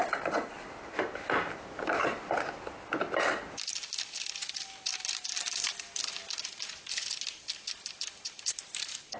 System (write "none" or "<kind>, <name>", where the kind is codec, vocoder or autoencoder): none